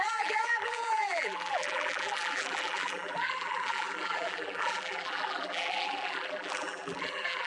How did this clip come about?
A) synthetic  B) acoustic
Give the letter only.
A